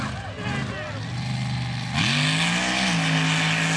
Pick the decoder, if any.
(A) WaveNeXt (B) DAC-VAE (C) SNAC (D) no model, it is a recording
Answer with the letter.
D